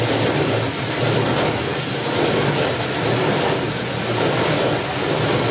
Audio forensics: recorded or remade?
recorded